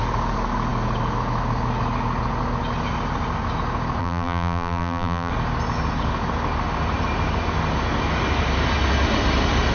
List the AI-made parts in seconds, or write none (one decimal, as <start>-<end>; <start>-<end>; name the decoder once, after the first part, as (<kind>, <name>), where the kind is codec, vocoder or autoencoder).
4.0-5.3 (vocoder, BigVGAN v2)